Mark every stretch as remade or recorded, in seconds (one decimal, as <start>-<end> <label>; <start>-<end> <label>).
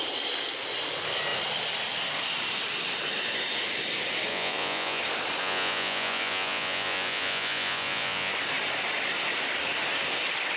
0.0-4.3 recorded; 4.3-5.0 remade; 5.0-5.4 recorded; 5.4-8.3 remade; 8.3-10.6 recorded